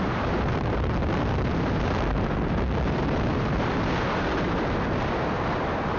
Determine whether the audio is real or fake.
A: fake